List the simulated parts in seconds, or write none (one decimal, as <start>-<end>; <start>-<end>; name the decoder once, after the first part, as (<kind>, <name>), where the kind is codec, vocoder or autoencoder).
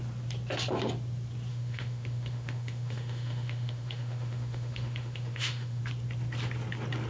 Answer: 1.5-5.8 (autoencoder, DAC-VAE)